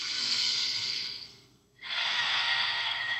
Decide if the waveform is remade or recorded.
remade